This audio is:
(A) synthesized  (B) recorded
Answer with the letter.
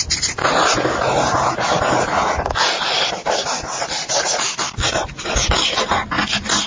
B